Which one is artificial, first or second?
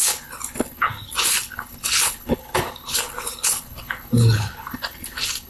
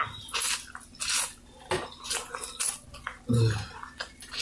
first